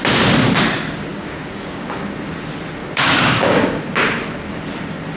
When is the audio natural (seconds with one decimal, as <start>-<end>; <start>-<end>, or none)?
0.0-1.1; 2.0-2.8; 3.8-5.2